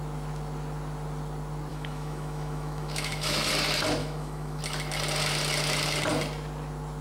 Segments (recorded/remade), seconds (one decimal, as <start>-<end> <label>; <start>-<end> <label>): 0.0-1.7 recorded; 1.7-3.5 remade; 3.5-4.0 recorded; 4.0-4.6 remade; 4.6-7.0 recorded